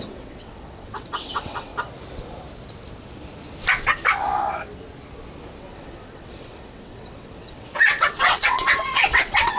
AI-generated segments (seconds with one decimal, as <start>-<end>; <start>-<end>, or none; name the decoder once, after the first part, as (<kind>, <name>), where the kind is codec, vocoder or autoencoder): 0.0-1.7 (vocoder, WaveNeXt); 5.6-9.6